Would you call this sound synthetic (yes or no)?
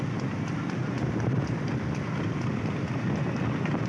yes